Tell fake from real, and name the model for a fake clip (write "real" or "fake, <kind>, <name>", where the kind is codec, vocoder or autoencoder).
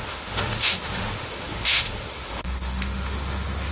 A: fake, autoencoder, DAC-VAE